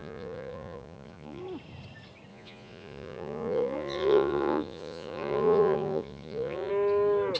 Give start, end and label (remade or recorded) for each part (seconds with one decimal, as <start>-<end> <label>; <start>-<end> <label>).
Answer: 0.0-1.4 remade; 1.4-2.3 recorded; 2.3-6.7 remade; 6.7-7.4 recorded